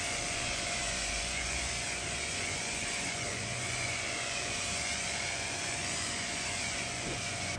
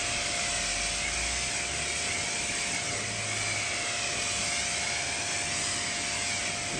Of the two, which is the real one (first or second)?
second